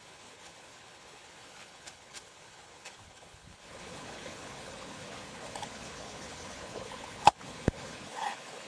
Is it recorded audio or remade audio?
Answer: remade